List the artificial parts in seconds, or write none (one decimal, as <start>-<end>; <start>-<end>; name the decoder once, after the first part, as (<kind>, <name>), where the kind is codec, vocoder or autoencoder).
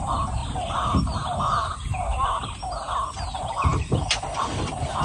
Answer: none